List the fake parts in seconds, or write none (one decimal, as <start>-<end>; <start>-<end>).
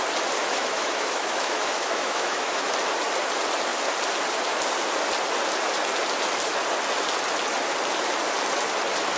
0.4-2.7